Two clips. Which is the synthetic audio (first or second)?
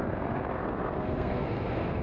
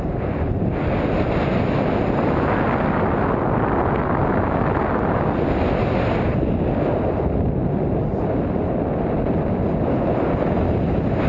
first